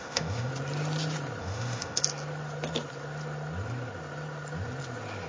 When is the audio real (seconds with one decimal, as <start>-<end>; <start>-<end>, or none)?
0.5-1.4; 2.0-5.3